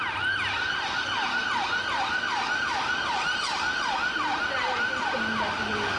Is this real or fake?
real